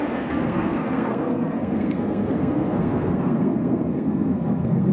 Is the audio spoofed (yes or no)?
yes